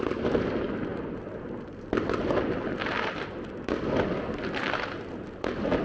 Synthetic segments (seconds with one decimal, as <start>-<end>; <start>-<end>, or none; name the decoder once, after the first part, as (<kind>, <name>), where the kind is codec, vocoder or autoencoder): none